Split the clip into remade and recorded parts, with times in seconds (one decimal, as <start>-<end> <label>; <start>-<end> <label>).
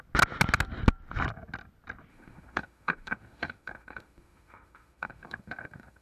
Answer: 0.0-2.1 recorded; 2.1-6.0 remade